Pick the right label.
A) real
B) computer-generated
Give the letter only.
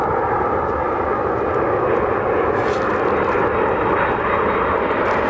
A